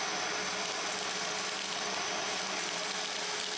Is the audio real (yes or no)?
yes